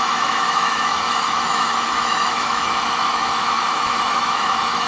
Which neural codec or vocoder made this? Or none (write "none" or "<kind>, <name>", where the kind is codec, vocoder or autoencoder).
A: autoencoder, DAC-VAE